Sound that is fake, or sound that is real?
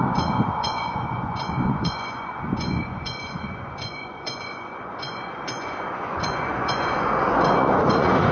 fake